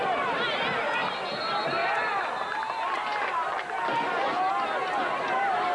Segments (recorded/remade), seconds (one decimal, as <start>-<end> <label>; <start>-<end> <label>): 0.0-5.7 recorded